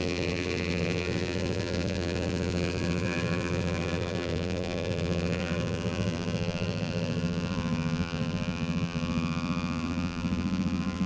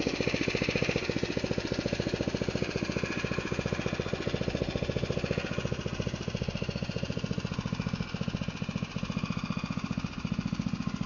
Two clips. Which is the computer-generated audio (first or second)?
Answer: first